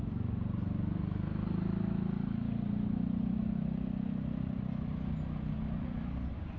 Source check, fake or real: real